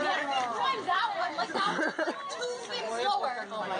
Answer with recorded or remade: recorded